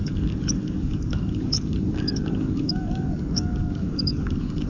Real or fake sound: fake